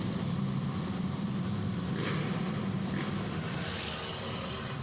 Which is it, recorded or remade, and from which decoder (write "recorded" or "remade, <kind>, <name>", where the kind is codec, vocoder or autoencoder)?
recorded